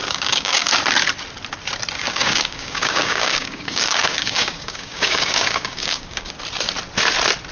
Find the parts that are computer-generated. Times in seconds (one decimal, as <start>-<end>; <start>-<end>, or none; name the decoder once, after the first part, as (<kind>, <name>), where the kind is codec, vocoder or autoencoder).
0.0-0.7 (codec, DAC); 2.0-6.3